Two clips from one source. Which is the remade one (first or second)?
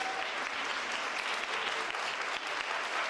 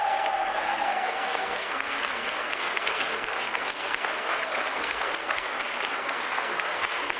second